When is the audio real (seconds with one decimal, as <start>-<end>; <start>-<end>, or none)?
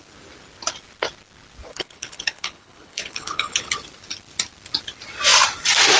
0.0-1.7; 3.7-6.0